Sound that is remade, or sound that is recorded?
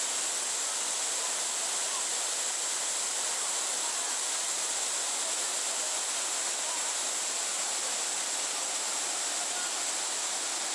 recorded